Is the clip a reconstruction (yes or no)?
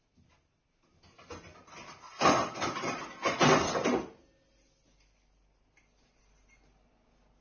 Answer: no